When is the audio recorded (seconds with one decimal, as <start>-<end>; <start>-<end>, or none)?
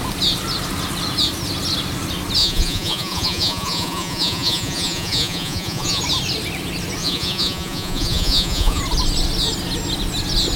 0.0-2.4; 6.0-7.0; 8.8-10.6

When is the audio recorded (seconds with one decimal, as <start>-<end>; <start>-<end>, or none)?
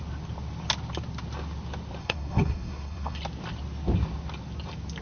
0.0-2.0; 3.2-5.0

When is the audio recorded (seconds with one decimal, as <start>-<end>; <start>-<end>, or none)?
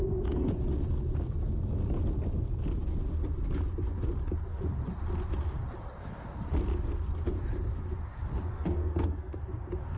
0.0-8.5; 9.4-10.0